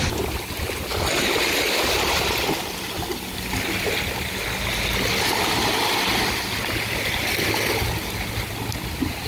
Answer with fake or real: real